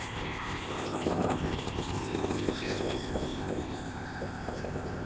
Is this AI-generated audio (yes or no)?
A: yes